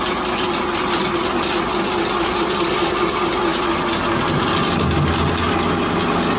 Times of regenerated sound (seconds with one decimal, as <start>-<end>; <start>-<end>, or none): none